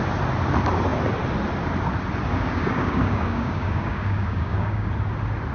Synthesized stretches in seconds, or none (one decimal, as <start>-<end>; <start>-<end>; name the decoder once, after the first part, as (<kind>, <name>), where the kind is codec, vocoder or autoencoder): 2.3-4.9 (codec, DAC)